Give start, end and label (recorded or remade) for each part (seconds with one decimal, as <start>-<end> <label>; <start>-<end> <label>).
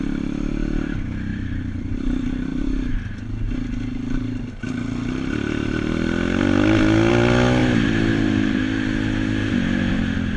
0.0-1.3 recorded; 1.3-1.9 remade; 1.9-7.6 recorded; 7.6-8.5 remade; 8.5-9.4 recorded; 9.4-10.0 remade; 10.0-10.4 recorded